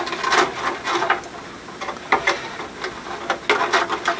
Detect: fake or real real